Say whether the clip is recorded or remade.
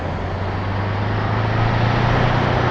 recorded